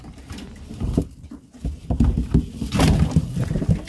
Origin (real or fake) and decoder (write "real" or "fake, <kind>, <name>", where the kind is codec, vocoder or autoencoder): real